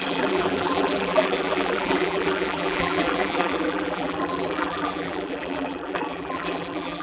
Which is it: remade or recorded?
remade